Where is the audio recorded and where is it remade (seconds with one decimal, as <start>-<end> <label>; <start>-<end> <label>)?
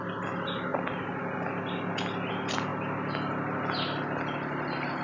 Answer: 0.0-5.0 recorded